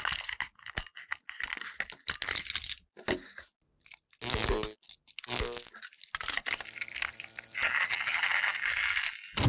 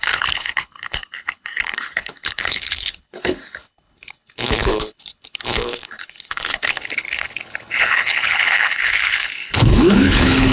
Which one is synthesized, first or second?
second